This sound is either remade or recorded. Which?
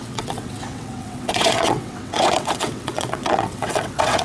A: remade